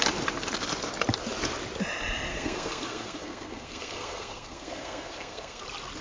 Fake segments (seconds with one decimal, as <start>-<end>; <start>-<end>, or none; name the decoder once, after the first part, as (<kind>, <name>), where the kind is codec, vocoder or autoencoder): 2.3-5.6 (codec, SNAC)